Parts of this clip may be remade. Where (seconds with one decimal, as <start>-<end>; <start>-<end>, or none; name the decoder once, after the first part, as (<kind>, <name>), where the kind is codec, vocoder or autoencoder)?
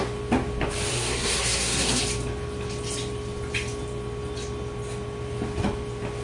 0.9-2.0 (codec, SNAC)